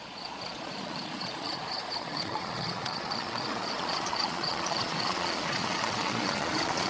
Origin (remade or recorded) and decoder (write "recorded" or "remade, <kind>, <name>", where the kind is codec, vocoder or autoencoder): remade, vocoder, Vocos